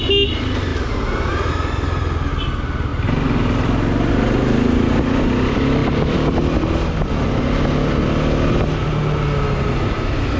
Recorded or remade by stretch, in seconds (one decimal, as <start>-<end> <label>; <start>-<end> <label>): 0.0-10.4 recorded